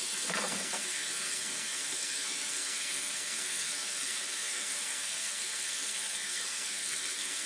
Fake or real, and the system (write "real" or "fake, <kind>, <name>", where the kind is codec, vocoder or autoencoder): fake, codec, SNAC